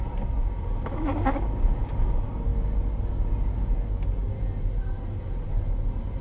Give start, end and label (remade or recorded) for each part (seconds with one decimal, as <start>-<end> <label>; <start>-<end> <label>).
0.0-6.2 recorded